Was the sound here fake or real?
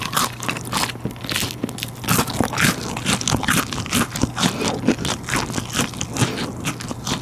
real